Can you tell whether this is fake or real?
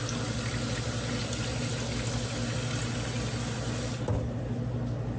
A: real